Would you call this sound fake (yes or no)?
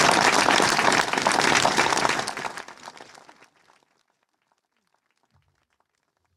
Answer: no